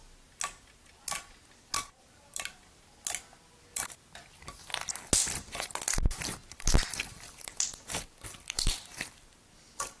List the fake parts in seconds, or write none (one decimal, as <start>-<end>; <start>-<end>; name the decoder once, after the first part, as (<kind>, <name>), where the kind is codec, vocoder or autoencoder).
none